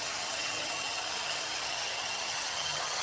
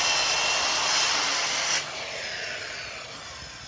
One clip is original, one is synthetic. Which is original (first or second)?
second